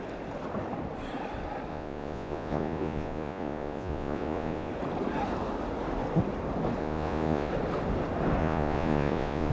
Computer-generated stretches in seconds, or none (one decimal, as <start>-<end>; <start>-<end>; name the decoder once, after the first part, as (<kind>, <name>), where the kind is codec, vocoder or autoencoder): 1.7-4.7 (vocoder, Vocos); 6.8-7.5; 8.4-9.5